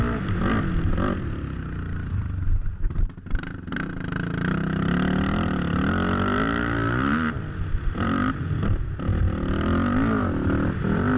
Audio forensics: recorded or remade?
recorded